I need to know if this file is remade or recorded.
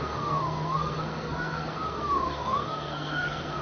remade